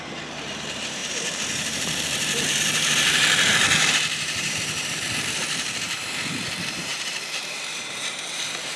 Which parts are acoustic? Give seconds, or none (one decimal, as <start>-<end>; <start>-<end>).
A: none